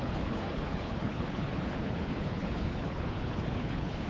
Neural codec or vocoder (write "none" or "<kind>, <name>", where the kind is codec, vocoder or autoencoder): codec, HILCodec